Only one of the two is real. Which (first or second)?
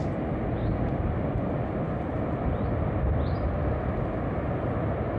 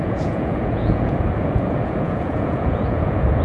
first